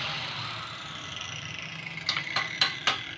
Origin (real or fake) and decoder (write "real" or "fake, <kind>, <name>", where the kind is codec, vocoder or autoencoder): real